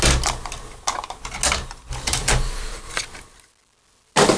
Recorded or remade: recorded